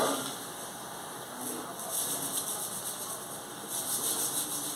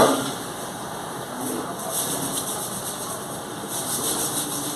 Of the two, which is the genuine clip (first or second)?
first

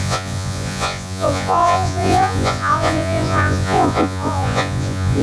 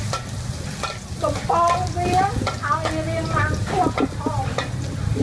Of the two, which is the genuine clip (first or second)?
second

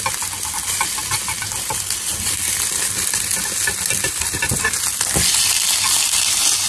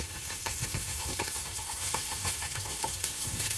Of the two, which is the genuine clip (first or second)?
first